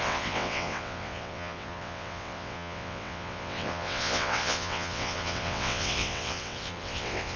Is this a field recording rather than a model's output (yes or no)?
no